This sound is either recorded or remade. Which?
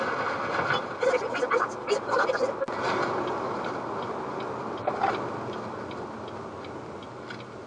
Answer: recorded